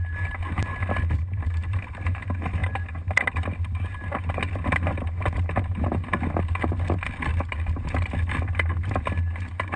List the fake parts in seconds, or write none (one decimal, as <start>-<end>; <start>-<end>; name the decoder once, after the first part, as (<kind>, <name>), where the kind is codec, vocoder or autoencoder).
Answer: none

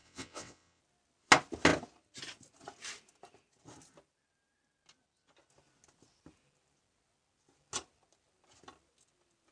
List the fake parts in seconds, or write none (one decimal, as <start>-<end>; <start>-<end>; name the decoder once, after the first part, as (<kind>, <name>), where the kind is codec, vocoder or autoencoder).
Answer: 0.0-0.8 (vocoder, WaveNeXt)

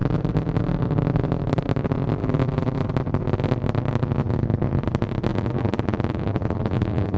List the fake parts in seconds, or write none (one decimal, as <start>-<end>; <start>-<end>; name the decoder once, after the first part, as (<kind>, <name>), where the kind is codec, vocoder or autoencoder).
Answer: 2.2-2.9 (vocoder, BigVGAN v2); 5.3-7.2

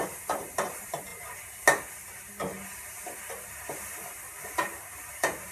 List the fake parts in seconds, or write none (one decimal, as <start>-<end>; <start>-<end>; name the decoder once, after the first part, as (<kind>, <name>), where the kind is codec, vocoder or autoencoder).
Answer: 0.0-1.1 (vocoder, BigVGAN v2); 4.4-5.5

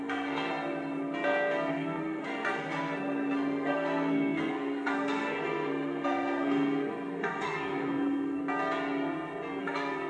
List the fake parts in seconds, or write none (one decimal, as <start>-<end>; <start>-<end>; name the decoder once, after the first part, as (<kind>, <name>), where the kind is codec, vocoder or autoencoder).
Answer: 0.0-0.5 (codec, SNAC); 1.7-8.4; 9.6-10.1